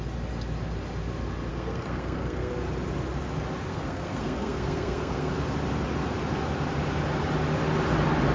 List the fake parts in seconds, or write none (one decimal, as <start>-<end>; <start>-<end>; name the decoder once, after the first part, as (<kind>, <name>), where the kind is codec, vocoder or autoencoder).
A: 1.5-2.5 (codec, SNAC); 3.7-5.3